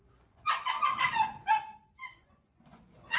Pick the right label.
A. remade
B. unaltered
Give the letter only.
A